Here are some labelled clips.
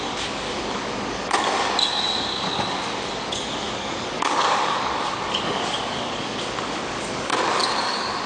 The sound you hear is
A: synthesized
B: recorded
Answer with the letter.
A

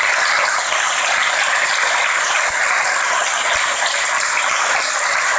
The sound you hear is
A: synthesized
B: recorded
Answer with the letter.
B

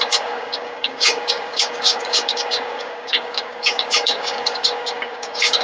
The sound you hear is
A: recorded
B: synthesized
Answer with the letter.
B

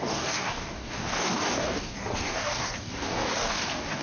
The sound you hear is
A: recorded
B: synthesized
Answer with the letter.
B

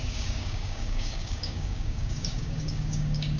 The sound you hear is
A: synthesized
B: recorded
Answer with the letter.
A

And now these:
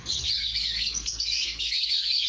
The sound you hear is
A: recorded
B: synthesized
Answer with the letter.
B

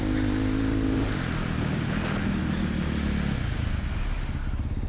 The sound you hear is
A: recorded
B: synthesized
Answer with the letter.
A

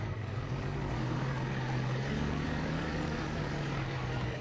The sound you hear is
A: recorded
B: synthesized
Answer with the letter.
B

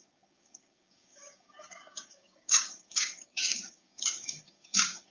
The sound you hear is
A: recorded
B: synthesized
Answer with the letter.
B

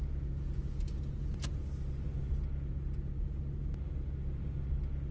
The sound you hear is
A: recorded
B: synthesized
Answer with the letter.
A